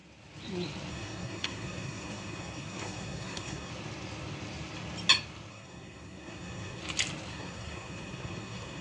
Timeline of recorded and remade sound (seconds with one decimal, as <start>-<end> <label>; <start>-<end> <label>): 0.0-0.9 recorded; 0.9-3.7 remade; 3.7-5.5 recorded; 5.5-6.8 remade; 6.8-7.3 recorded; 7.3-8.8 remade

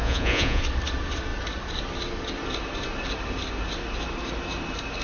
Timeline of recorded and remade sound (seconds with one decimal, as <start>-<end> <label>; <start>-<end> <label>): 0.0-0.6 remade; 0.6-5.0 recorded

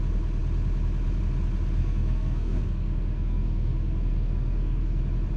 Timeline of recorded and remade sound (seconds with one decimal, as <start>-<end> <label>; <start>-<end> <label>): 0.0-1.8 recorded; 1.8-5.0 remade; 5.0-5.4 recorded